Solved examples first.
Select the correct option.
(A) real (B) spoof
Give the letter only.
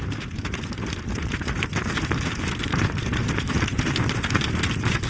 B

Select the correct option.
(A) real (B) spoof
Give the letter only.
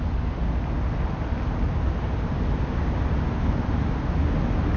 A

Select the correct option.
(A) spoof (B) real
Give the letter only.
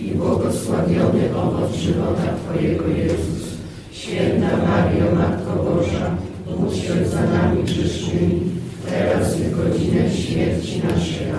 B